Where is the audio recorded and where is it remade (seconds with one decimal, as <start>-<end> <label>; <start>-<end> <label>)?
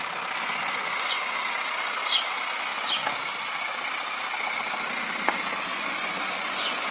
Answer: 0.0-0.6 recorded; 0.6-1.2 remade; 1.2-5.7 recorded; 5.7-6.9 remade